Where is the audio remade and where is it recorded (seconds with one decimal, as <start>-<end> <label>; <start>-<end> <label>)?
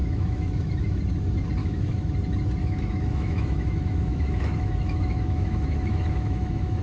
0.0-1.0 remade; 1.0-1.6 recorded; 1.6-2.1 remade; 2.1-2.6 recorded; 2.6-6.8 remade